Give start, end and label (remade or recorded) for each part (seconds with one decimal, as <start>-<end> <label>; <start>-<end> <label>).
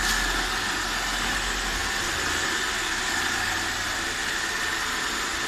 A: 0.0-5.5 recorded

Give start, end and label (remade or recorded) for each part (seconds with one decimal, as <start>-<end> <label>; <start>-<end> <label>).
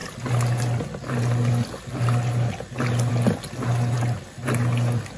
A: 0.0-5.2 recorded